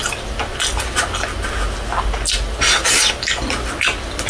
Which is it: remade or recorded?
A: recorded